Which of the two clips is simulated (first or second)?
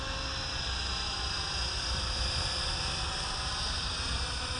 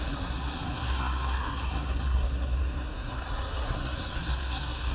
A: second